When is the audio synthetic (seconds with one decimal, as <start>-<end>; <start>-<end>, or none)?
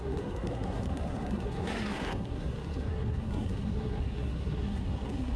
0.0-5.4